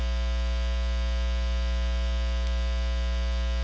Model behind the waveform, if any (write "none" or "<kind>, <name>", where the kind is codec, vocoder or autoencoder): none